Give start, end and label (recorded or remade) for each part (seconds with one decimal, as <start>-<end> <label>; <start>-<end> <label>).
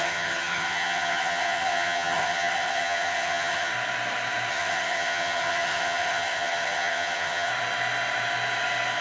0.0-3.7 remade; 3.7-4.5 recorded; 4.5-7.5 remade; 7.5-9.0 recorded